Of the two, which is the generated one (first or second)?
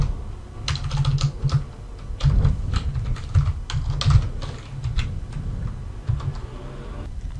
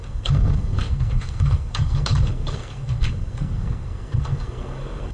second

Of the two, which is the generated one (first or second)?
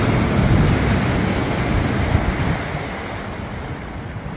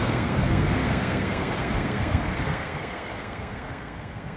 second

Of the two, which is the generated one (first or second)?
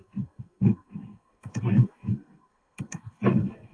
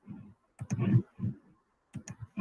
first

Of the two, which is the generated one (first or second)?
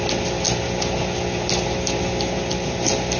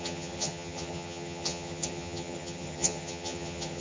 second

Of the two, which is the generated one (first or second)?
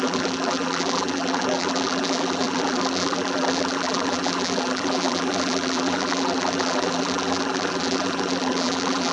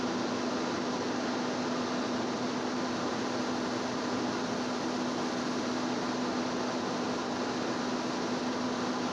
first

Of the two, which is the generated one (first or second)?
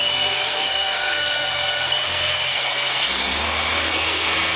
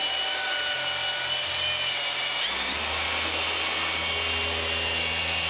first